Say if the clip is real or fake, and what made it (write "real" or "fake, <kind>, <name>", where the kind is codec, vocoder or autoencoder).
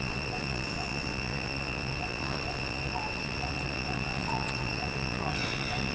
fake, vocoder, WaveNeXt